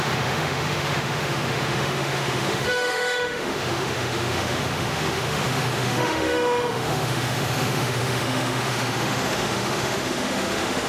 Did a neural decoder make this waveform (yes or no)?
yes